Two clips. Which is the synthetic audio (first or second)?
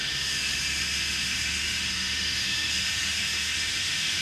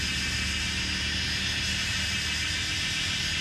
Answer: first